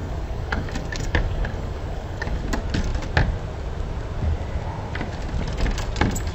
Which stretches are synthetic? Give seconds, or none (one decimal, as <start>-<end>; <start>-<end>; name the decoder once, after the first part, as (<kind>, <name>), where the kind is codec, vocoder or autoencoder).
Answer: 0.0-2.4 (codec, DAC)